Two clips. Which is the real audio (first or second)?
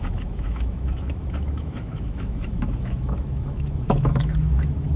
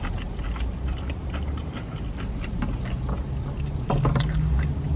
second